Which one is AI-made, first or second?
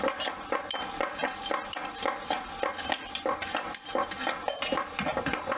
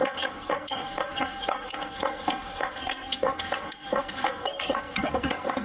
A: second